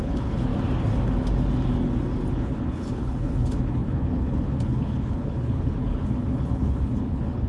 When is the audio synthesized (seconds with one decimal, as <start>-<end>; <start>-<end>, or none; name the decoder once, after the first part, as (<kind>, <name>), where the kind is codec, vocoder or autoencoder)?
0.0-0.5 (codec, HILCodec); 2.3-7.5

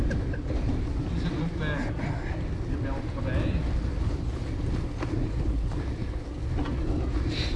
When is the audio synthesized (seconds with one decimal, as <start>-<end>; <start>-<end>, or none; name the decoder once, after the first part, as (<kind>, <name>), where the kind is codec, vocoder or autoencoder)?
none

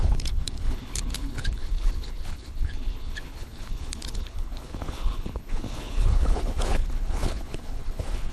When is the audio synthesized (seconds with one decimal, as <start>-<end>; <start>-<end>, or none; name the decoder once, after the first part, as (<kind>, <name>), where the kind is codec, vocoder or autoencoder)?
0.0-8.3 (codec, HILCodec)

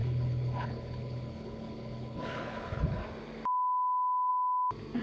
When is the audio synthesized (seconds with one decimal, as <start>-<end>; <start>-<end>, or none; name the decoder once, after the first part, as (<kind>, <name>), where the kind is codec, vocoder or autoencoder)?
0.0-3.0 (codec, HILCodec)